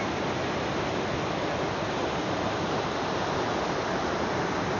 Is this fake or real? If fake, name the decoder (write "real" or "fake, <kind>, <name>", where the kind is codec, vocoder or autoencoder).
real